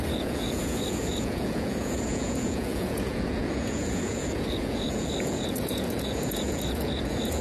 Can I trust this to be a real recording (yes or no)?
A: no